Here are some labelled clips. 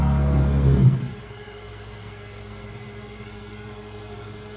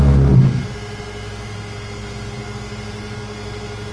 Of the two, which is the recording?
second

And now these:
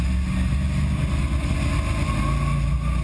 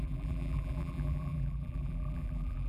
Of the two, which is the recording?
first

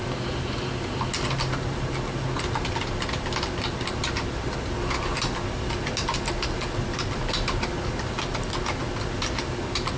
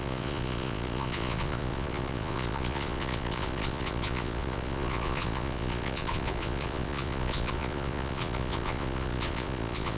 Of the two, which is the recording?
first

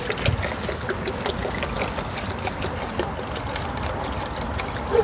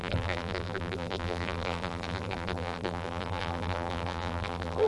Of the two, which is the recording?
first